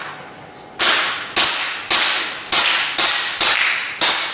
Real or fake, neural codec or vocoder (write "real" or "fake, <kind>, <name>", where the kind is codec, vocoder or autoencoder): real